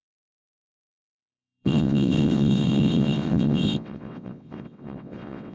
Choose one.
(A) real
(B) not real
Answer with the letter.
B